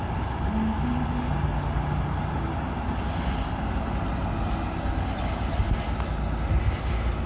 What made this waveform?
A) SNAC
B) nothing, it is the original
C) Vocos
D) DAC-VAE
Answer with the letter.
B